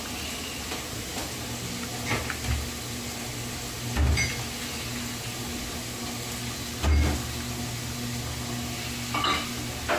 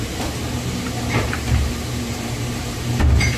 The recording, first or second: first